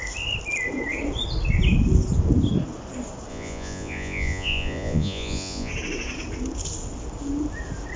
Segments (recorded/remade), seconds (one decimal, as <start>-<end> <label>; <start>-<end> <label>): 0.0-3.3 recorded; 3.3-5.7 remade; 5.7-8.0 recorded